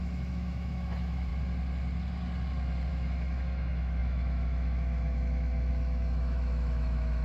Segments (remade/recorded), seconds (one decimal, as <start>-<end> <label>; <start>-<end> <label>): 0.0-1.3 remade; 1.3-2.9 recorded; 2.9-7.2 remade